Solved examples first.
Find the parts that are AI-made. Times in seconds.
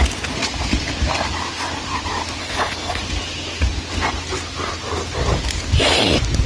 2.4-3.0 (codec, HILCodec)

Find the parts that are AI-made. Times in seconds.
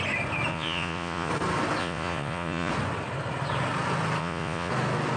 0.5-1.3 (vocoder, Vocos); 1.8-2.7; 4.2-4.7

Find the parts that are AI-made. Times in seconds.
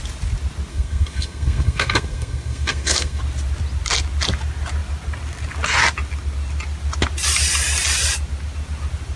0.7-3.2 (codec, SNAC)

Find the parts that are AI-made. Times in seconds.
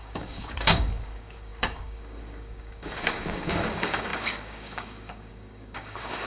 0.0-6.3 (codec, DAC)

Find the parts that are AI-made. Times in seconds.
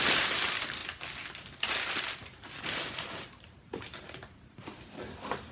0.0-0.8 (vocoder, BigVGAN v2); 2.6-5.5